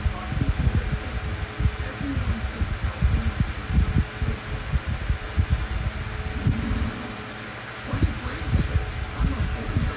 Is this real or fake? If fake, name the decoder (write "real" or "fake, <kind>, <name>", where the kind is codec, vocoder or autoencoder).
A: real